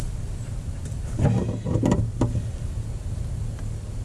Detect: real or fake real